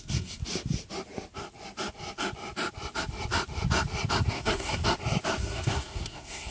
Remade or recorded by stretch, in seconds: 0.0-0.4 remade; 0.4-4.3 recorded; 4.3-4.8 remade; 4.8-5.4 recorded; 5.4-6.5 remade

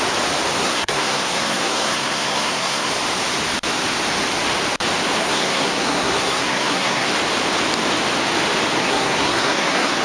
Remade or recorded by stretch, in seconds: 0.0-0.6 recorded; 0.6-2.9 remade; 2.9-5.2 recorded; 5.2-7.1 remade; 7.1-8.8 recorded; 8.8-10.0 remade

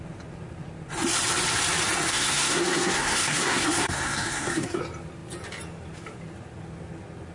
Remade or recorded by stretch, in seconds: 0.0-2.1 recorded; 2.1-4.8 remade; 4.8-7.3 recorded